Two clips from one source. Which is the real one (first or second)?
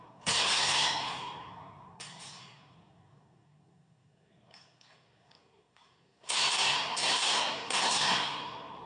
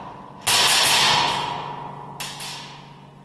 second